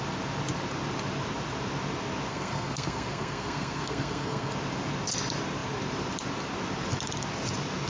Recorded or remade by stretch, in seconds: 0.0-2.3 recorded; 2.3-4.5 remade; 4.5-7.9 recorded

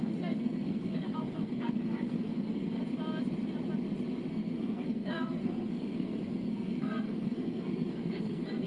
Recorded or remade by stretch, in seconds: 0.0-2.8 remade; 2.8-4.3 recorded; 4.3-8.7 remade